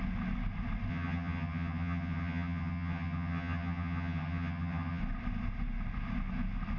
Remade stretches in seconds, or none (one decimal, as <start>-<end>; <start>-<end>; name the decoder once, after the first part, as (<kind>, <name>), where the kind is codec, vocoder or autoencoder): 0.9-5.0 (vocoder, HiFi-GAN)